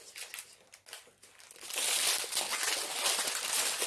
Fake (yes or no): no